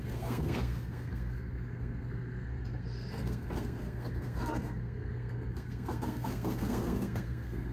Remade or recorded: remade